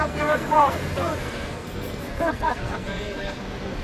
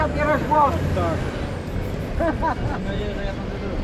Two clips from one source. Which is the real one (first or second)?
second